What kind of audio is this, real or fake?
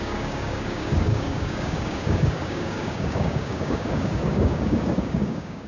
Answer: fake